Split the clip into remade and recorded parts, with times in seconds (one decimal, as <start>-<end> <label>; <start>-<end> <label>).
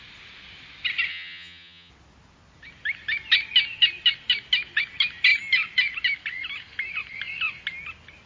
0.0-1.1 recorded; 1.1-1.9 remade; 1.9-8.3 recorded